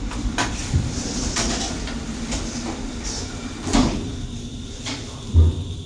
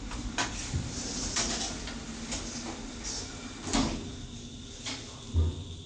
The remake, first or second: first